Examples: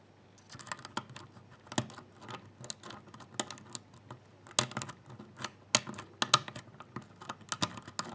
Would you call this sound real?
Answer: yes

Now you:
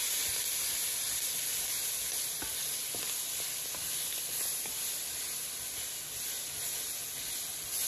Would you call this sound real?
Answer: yes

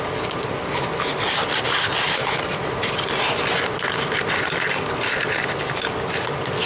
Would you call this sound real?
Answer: yes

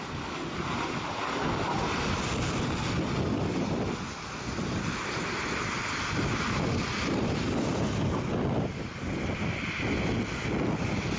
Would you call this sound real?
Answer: yes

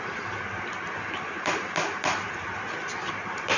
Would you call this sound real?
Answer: yes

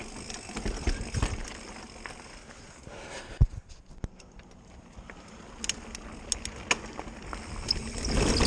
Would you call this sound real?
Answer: yes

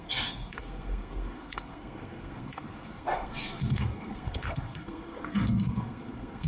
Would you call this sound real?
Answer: no